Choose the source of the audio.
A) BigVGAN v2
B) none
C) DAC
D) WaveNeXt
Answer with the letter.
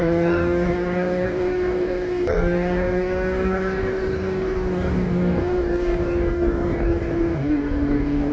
C